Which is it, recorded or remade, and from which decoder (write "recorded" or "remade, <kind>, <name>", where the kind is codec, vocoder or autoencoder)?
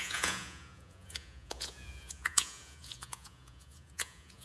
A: remade, vocoder, Vocos